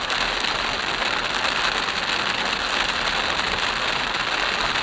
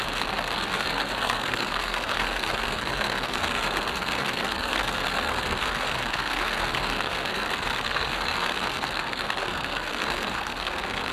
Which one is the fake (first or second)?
second